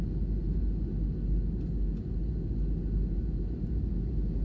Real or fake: real